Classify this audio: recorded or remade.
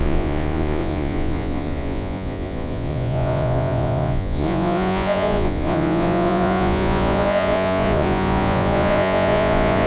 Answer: remade